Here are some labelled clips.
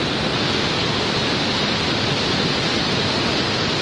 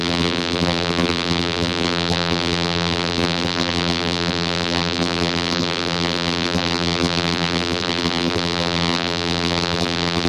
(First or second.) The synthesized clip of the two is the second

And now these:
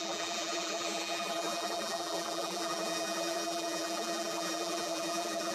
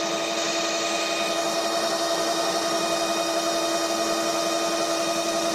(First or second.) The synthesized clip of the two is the first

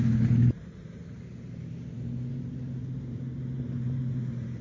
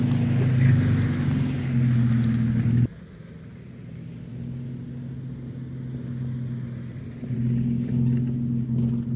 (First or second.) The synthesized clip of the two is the first